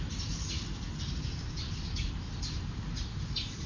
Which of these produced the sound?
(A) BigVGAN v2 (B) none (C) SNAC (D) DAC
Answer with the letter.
A